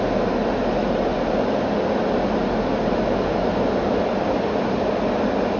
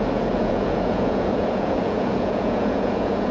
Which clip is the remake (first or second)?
second